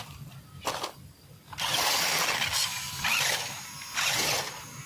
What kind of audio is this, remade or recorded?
recorded